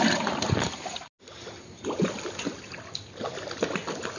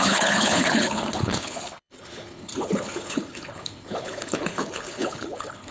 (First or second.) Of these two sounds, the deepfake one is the second